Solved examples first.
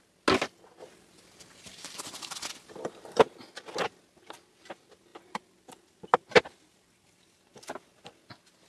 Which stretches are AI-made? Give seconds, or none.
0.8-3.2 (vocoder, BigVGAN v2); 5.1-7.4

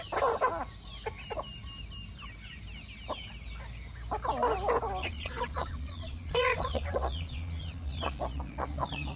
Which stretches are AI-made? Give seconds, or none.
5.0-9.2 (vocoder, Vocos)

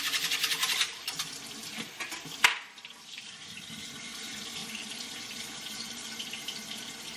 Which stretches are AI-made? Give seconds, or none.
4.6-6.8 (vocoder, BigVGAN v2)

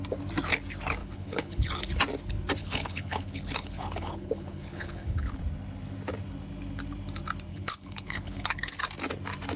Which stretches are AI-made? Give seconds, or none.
1.0-1.7 (codec, HILCodec); 2.6-5.4; 7.5-8.8

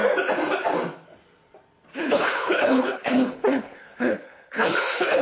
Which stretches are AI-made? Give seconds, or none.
1.9-5.2 (codec, HILCodec)

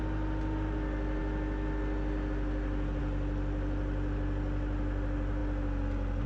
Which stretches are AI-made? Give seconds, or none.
none

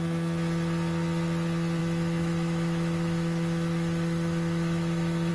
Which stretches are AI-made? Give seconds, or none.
1.8-5.3 (autoencoder, DAC-VAE)